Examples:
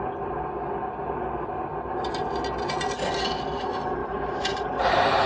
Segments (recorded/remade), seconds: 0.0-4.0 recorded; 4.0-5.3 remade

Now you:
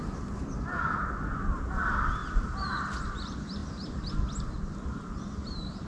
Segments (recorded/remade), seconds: 0.0-2.2 recorded; 2.2-2.7 remade; 2.7-3.6 recorded; 3.6-4.1 remade; 4.1-4.9 recorded; 4.9-5.9 remade

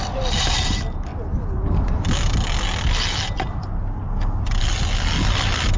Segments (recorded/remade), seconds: 0.0-1.1 remade; 1.1-4.6 recorded; 4.6-5.8 remade